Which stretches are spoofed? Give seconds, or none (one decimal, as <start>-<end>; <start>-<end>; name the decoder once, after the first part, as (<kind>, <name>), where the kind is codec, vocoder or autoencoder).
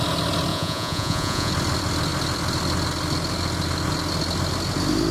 0.5-1.5 (vocoder, Vocos)